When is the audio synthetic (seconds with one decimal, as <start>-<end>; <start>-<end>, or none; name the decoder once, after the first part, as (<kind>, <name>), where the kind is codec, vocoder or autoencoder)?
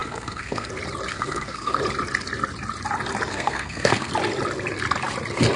0.0-0.7 (codec, SNAC); 1.1-1.8; 3.3-4.1